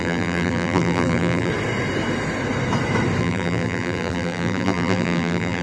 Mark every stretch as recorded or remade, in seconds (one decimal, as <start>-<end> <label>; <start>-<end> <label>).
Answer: 0.0-1.5 remade; 1.5-3.2 recorded; 3.2-5.6 remade